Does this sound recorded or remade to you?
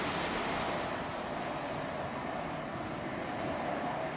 recorded